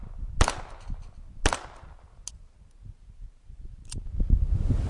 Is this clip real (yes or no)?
yes